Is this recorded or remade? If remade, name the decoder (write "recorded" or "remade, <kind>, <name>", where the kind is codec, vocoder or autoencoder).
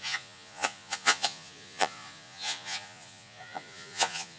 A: remade, vocoder, Vocos